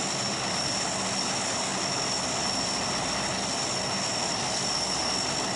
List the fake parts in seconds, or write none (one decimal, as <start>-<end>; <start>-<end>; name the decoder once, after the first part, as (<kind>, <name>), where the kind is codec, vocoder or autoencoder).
none